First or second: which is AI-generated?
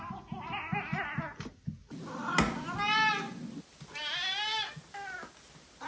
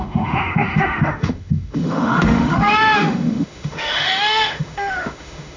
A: second